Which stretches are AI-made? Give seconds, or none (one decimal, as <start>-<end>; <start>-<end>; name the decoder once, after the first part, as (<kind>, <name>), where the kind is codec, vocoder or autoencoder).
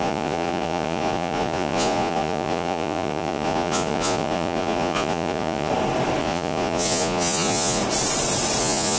0.0-5.7 (vocoder, Vocos); 6.2-7.8; 8.6-9.0